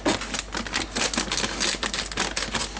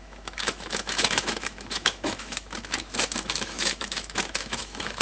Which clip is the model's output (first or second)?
second